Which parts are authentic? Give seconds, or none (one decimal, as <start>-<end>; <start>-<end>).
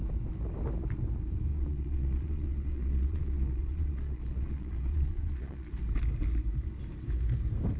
0.0-1.5; 5.7-7.8